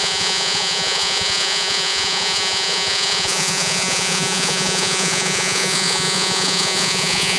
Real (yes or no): no